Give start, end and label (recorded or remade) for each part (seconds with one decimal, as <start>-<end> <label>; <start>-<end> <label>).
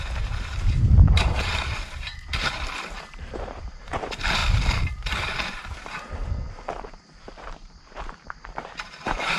0.0-4.4 remade; 4.4-5.0 recorded; 5.0-9.4 remade